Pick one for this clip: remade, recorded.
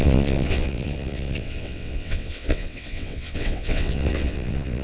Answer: remade